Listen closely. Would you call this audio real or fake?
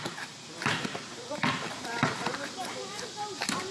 fake